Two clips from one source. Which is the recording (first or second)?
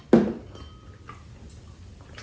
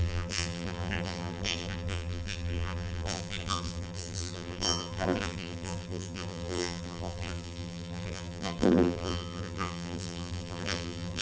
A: first